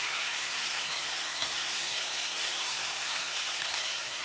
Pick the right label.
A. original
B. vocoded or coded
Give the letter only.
B